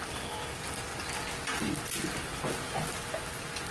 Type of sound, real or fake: real